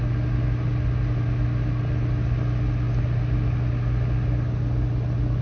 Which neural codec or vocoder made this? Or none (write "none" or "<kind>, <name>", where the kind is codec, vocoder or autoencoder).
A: none